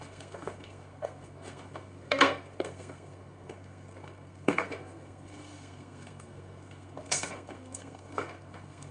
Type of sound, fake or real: fake